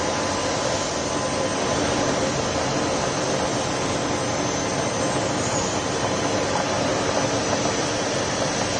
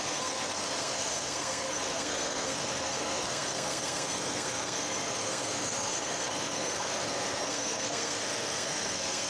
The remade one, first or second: second